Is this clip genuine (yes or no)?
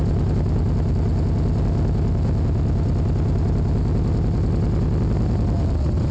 yes